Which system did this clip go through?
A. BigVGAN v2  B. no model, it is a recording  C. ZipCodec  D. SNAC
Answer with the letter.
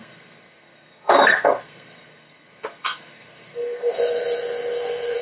D